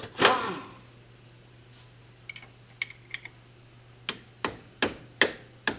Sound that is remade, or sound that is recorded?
recorded